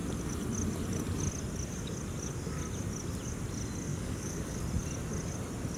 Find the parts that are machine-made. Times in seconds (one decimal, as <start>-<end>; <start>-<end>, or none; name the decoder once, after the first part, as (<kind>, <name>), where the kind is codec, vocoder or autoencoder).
3.9-4.6 (codec, DAC)